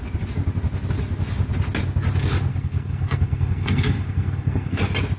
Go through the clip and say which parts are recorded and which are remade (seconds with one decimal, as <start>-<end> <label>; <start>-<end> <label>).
0.0-2.5 recorded; 2.5-4.8 remade; 4.8-5.2 recorded